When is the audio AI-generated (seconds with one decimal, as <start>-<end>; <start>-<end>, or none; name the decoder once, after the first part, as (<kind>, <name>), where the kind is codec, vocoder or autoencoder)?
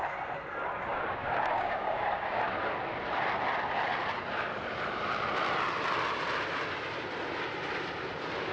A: 0.9-2.4 (codec, DAC)